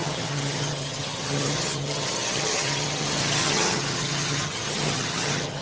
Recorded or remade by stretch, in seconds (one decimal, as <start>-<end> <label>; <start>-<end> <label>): 0.0-5.6 remade